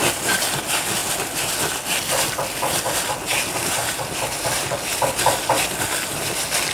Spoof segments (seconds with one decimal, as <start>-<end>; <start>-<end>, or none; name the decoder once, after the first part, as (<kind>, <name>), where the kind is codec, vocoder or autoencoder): none